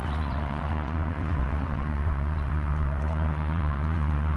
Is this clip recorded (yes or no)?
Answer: no